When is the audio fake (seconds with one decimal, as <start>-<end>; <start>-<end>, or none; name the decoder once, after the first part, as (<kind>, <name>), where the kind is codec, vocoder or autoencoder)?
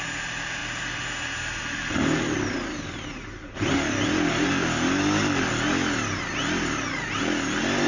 none